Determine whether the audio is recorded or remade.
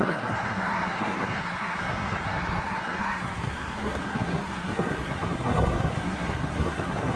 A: remade